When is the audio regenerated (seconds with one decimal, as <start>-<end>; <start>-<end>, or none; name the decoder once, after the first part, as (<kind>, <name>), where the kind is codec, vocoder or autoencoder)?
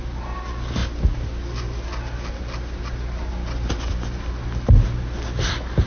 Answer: none